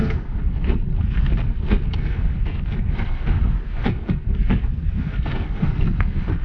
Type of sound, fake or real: fake